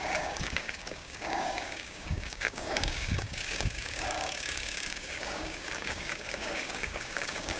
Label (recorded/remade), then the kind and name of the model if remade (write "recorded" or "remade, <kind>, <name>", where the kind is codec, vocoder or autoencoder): remade, codec, DAC